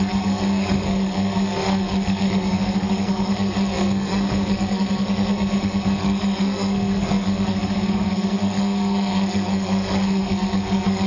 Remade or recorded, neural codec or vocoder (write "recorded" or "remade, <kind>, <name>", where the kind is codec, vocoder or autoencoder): remade, codec, SNAC